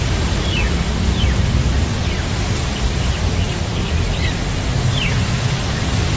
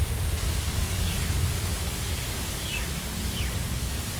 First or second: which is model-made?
second